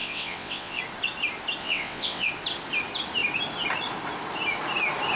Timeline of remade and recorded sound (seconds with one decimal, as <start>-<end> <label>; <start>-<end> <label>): 0.0-0.8 remade; 0.8-1.6 recorded; 1.6-2.3 remade; 2.3-5.2 recorded